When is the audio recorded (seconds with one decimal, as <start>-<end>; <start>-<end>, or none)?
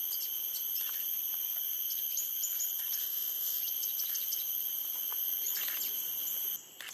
0.0-3.0; 3.6-6.9